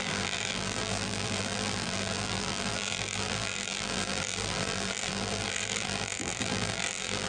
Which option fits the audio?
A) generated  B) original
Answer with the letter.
A